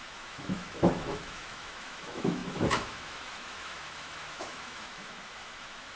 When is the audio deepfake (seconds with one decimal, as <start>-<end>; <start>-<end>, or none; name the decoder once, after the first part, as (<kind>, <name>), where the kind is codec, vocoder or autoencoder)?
0.0-6.0 (autoencoder, DAC-VAE)